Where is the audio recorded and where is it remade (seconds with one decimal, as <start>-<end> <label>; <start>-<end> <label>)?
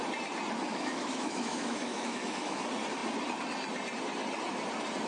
0.0-0.7 recorded; 0.7-2.6 remade; 2.6-5.1 recorded